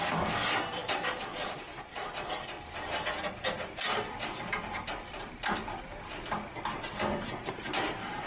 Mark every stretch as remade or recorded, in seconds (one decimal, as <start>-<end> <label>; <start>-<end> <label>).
0.0-8.3 recorded